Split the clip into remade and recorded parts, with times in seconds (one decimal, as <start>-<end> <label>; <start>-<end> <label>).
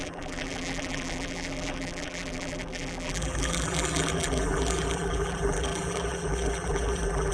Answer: 0.0-7.3 remade